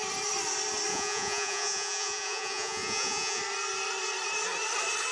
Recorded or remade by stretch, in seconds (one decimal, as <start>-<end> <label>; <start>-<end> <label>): 0.0-0.9 recorded; 0.9-3.4 remade; 3.4-5.1 recorded